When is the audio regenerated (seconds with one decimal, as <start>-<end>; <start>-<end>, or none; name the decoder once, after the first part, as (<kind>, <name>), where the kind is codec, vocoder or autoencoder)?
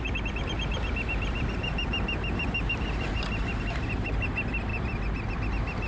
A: none